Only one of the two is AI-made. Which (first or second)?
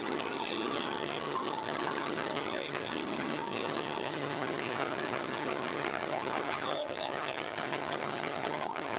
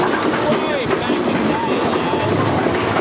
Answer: first